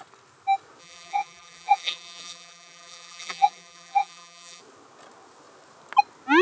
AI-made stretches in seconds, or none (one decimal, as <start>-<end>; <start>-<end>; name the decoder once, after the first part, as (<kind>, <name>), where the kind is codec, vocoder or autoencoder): 0.8-4.6 (vocoder, BigVGAN v2)